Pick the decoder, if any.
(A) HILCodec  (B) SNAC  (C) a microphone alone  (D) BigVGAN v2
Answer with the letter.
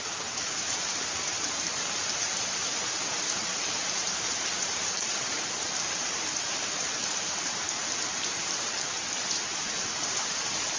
D